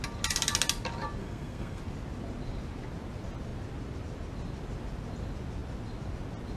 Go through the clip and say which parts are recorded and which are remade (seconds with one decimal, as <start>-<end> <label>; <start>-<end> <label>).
0.0-1.2 recorded; 1.2-1.8 remade; 1.8-6.6 recorded

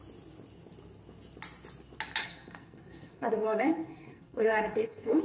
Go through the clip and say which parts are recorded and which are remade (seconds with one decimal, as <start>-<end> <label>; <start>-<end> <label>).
0.0-2.2 recorded; 2.2-5.2 remade

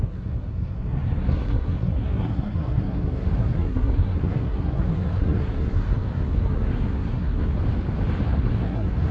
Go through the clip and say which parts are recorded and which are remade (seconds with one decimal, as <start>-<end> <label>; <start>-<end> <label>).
0.0-7.5 remade; 7.5-8.2 recorded; 8.2-9.1 remade